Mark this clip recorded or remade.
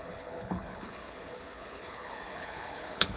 remade